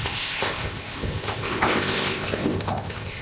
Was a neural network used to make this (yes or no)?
yes